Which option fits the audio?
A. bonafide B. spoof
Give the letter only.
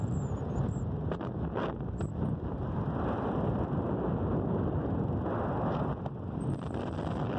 A